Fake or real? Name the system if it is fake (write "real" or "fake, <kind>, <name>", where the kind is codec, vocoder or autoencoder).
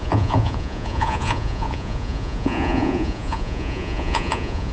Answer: fake, vocoder, Vocos